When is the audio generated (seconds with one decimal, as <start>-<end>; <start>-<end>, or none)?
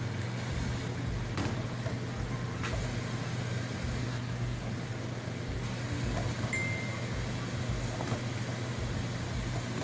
4.0-4.7